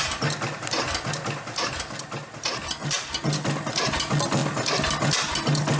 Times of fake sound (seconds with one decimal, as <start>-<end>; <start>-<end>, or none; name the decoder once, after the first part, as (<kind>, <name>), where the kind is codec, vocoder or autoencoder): 2.6-3.2 (vocoder, BigVGAN v2)